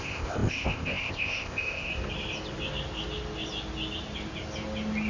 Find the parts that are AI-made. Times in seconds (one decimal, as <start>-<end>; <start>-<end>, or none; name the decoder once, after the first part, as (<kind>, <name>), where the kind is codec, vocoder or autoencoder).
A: 0.0-1.9 (codec, ZipCodec)